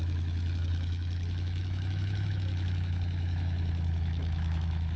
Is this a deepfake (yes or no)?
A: yes